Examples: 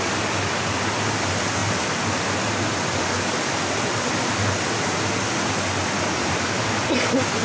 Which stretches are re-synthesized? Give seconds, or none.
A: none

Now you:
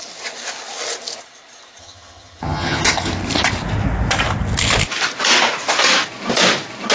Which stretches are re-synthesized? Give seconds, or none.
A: 1.8-3.1 (vocoder, HiFi-GAN)

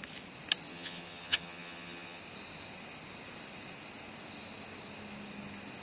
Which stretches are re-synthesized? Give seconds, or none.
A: 0.7-2.2 (vocoder, HiFi-GAN)

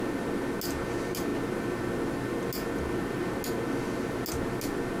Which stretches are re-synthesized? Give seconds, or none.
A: none